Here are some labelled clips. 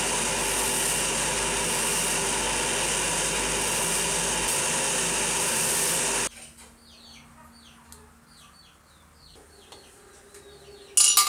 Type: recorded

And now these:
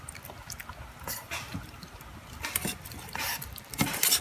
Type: remade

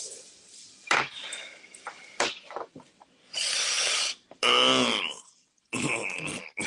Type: remade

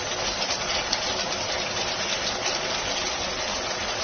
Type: recorded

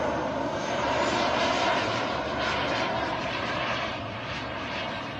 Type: remade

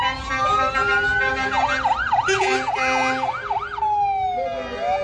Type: recorded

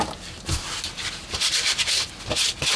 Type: recorded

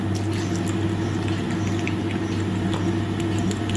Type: recorded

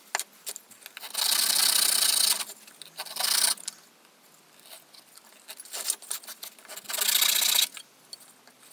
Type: recorded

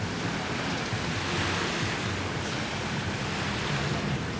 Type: recorded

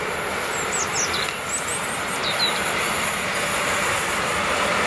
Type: recorded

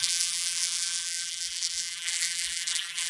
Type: remade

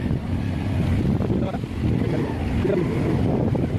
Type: remade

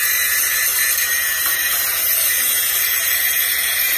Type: remade